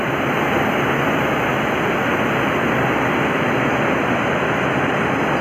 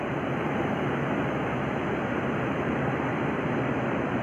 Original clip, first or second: first